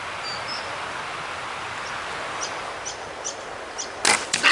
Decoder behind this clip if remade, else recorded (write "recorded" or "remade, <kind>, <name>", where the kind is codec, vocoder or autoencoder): recorded